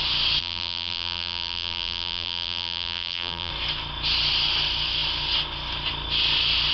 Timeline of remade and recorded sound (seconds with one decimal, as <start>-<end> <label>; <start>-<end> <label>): 0.0-0.4 recorded; 0.4-3.5 remade; 3.5-6.7 recorded